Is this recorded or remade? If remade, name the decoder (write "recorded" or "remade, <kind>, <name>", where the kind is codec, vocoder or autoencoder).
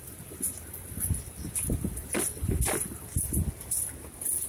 recorded